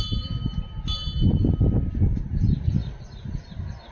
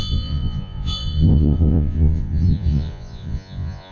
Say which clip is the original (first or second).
first